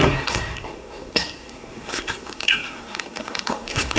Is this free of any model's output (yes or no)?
no